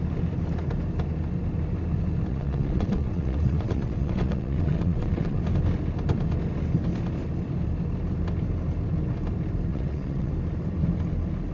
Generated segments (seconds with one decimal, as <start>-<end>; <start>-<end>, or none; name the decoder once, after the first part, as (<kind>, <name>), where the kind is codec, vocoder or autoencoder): 2.3-5.4 (vocoder, WaveNeXt); 9.7-10.3

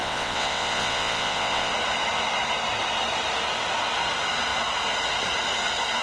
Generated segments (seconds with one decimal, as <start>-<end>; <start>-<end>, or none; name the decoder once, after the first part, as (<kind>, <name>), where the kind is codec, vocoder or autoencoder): 0.0-1.7 (vocoder, WaveNeXt)

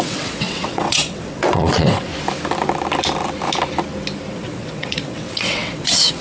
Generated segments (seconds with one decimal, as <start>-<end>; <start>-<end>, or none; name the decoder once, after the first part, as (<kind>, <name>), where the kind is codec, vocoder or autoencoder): 0.0-2.1 (vocoder, WaveNeXt); 4.3-6.2

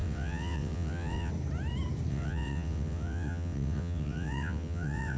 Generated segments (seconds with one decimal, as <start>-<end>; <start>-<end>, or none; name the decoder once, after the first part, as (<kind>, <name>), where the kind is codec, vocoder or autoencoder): 0.0-1.3 (vocoder, WaveNeXt); 2.1-5.2

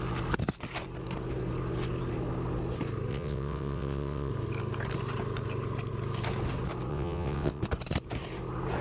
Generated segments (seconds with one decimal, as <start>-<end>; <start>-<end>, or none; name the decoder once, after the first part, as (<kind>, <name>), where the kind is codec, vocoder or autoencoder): 3.1-4.3 (vocoder, WaveNeXt); 6.9-7.6

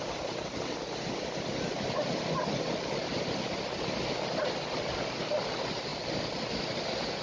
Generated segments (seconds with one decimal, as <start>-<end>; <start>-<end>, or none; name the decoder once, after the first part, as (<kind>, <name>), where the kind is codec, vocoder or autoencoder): none